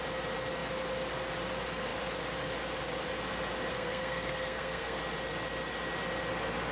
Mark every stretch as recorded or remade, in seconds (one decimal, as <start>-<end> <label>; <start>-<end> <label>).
0.0-3.7 recorded; 3.7-5.0 remade; 5.0-6.7 recorded